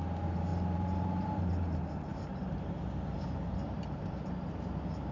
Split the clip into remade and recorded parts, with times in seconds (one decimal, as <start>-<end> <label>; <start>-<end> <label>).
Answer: 0.0-0.5 recorded; 0.5-1.5 remade; 1.5-2.1 recorded; 2.1-4.1 remade; 4.1-5.1 recorded